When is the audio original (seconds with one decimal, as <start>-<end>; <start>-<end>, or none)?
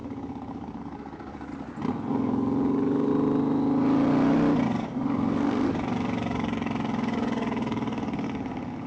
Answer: 1.5-2.1; 3.1-4.7